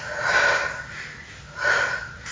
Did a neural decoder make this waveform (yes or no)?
no